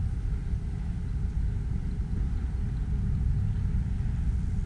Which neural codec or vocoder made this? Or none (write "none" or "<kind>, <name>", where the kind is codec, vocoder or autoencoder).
none